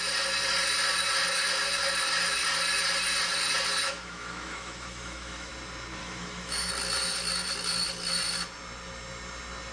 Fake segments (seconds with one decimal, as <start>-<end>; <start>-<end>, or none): 3.8-5.5; 6.0-6.7